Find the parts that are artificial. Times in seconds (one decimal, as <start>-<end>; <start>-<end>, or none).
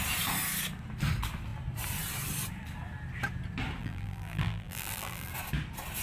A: 3.8-5.3